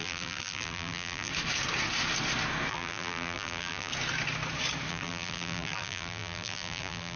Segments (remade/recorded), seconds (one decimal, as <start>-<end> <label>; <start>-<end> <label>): 0.0-1.3 remade; 1.3-2.7 recorded; 2.7-3.9 remade; 3.9-4.9 recorded; 4.9-7.2 remade